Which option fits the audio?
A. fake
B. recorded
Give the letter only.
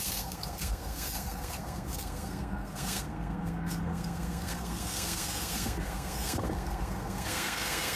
A